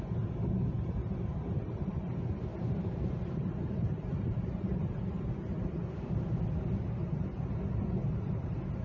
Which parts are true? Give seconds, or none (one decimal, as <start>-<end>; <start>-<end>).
0.0-1.0; 1.9-2.5; 5.2-8.8